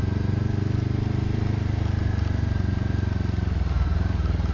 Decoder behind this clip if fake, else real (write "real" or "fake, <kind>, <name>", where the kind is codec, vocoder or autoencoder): real